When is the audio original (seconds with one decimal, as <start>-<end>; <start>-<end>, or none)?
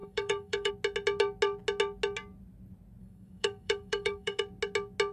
0.7-3.0; 4.4-5.1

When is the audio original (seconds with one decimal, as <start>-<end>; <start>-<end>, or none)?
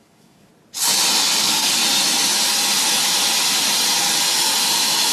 0.5-1.4; 1.8-5.1